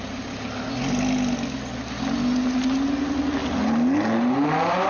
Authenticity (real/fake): real